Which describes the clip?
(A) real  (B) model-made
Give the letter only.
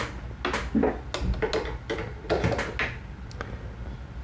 A